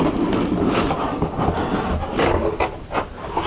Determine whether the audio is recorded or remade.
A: recorded